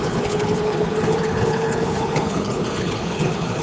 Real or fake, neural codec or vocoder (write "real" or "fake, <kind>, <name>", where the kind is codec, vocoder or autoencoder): fake, codec, HILCodec